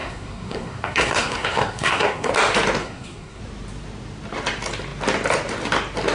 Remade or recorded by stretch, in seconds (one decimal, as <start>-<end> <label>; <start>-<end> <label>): 0.0-2.3 remade; 2.3-2.8 recorded; 2.8-3.4 remade; 3.4-6.1 recorded